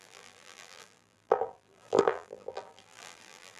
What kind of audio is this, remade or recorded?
remade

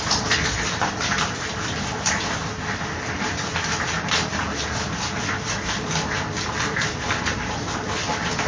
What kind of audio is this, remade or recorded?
recorded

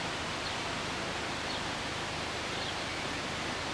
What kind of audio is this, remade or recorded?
recorded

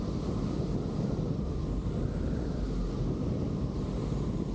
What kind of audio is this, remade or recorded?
recorded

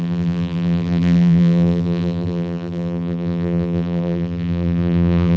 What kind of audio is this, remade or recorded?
remade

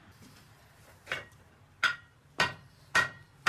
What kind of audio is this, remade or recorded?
remade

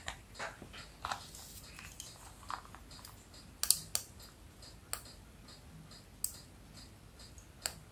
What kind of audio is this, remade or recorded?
recorded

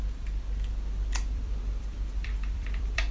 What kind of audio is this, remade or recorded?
remade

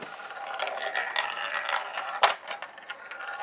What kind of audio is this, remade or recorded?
remade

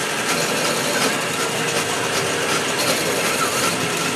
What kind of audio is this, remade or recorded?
recorded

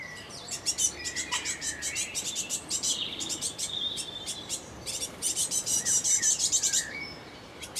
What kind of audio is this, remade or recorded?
remade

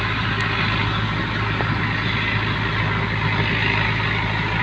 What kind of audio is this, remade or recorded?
recorded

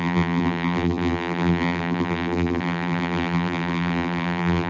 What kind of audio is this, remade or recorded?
remade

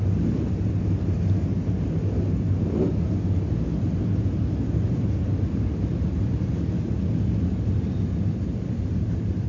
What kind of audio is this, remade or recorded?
recorded